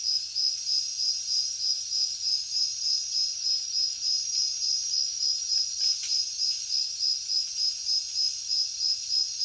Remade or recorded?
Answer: recorded